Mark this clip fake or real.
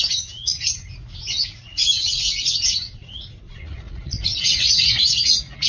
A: fake